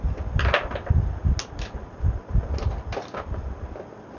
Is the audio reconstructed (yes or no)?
no